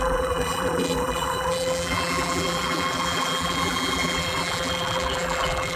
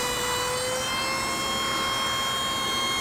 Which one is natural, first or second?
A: second